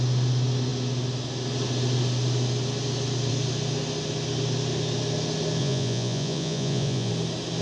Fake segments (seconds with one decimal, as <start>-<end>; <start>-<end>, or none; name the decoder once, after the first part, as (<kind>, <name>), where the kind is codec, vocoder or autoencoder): 5.6-7.1 (vocoder, Vocos)